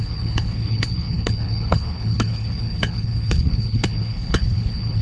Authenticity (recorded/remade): remade